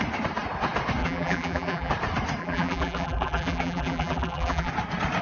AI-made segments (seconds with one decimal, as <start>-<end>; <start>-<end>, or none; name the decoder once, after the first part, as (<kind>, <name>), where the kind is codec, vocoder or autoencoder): 1.0-1.9 (vocoder, BigVGAN v2); 2.4-4.7